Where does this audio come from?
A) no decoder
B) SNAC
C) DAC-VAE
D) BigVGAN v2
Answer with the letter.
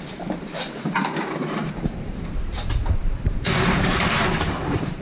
D